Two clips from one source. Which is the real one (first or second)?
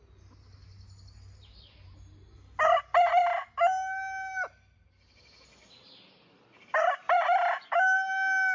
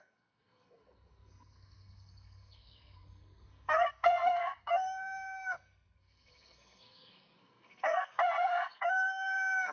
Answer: first